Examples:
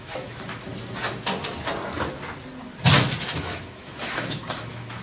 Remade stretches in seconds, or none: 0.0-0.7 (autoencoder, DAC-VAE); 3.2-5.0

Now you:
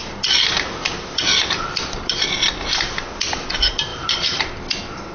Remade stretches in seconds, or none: 3.9-4.4 (vocoder, BigVGAN v2)

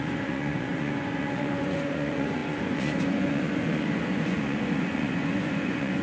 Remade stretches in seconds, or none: 0.0-6.0 (vocoder, Vocos)

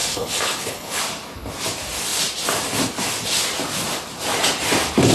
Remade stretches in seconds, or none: 0.0-1.0 (codec, HILCodec)

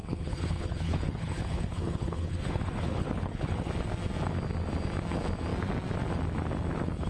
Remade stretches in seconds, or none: 0.0-3.7 (codec, HILCodec)